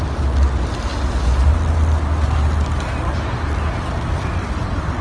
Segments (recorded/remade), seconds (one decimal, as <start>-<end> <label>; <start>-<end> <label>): 0.0-5.0 recorded

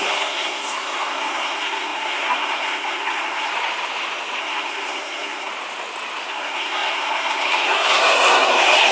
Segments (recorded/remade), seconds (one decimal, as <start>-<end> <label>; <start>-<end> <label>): 0.0-3.5 remade; 3.5-4.4 recorded; 4.4-5.5 remade; 5.5-6.3 recorded; 6.3-8.9 remade

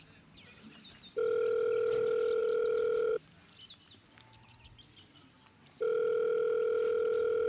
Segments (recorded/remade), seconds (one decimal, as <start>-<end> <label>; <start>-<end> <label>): 0.0-7.5 recorded

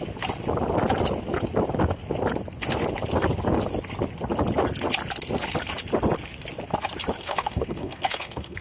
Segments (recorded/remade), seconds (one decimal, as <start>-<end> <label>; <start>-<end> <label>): 0.0-7.2 recorded; 7.2-8.6 remade